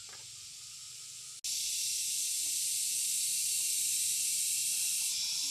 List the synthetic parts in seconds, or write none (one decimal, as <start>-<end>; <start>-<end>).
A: 0.0-1.3; 3.5-4.6